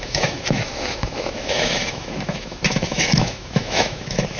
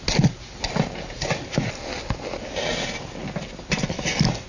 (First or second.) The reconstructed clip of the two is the first